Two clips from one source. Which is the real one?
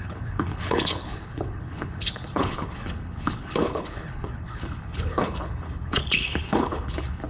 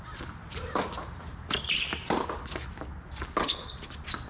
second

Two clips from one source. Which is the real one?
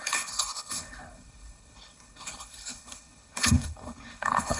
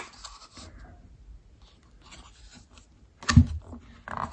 second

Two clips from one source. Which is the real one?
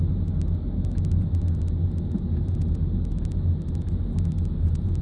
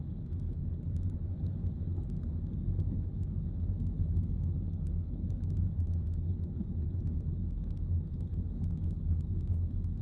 first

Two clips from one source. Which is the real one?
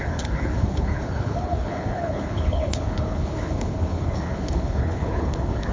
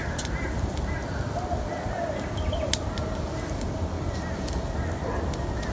second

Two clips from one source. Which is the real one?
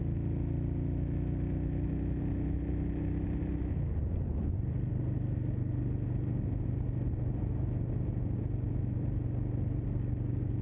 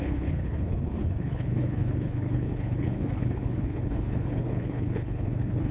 first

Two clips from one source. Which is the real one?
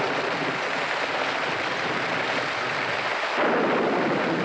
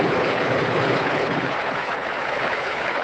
first